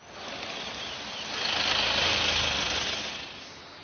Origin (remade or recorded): recorded